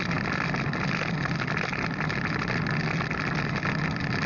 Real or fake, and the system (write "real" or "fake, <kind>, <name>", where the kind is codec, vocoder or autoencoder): real